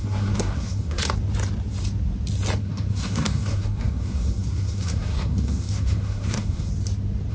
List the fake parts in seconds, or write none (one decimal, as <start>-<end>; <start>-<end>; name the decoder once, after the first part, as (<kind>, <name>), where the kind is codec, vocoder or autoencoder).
0.0-1.0 (codec, SNAC); 2.6-6.7